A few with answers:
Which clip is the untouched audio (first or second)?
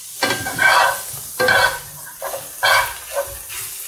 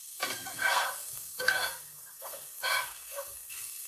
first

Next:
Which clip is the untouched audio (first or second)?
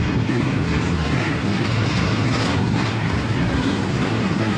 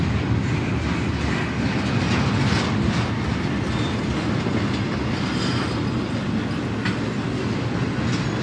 second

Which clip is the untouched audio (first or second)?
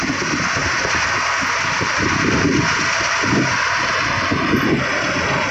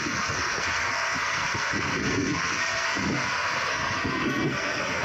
first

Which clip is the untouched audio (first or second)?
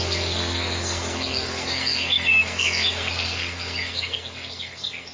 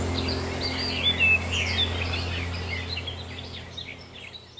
second